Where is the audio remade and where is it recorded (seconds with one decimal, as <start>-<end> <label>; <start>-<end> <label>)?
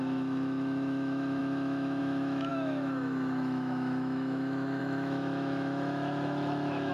0.0-6.9 remade